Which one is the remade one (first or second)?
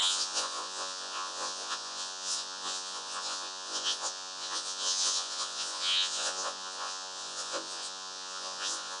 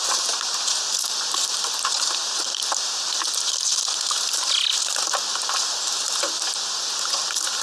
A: first